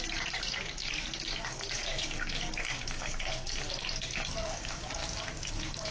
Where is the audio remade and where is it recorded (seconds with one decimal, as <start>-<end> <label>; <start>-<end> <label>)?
0.0-5.0 remade; 5.0-5.5 recorded; 5.5-5.9 remade